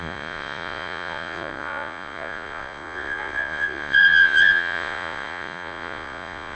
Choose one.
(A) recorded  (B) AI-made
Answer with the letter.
B